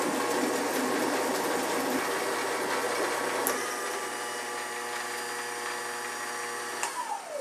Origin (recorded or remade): recorded